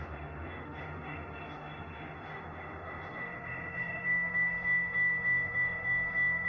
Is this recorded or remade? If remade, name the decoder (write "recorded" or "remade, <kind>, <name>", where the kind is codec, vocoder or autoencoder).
remade, autoencoder, DAC-VAE